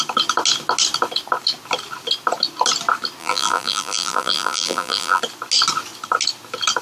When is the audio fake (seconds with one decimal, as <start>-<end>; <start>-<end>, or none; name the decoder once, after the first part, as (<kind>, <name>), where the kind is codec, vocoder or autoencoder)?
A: 3.2-5.2 (vocoder, BigVGAN v2)